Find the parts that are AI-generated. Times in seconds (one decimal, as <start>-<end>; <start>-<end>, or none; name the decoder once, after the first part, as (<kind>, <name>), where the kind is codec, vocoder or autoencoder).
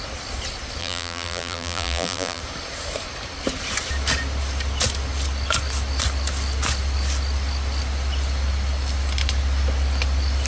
0.8-2.4 (vocoder, BigVGAN v2)